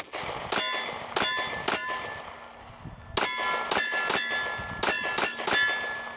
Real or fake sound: real